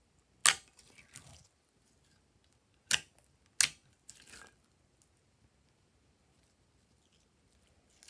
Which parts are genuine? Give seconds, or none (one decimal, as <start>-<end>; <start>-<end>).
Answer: 0.0-8.1